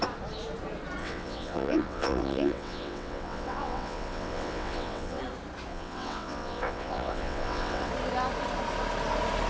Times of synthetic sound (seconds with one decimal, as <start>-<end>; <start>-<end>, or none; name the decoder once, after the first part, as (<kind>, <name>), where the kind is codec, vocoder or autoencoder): 1.0-5.2 (vocoder, WaveNeXt); 5.7-7.9